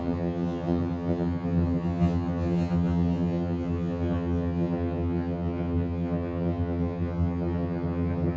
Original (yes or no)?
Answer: no